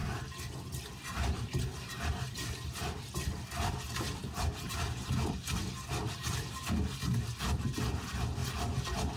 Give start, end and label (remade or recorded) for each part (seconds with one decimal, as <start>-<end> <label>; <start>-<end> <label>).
0.0-9.2 recorded